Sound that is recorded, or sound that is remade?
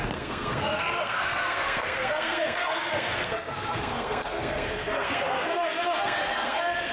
remade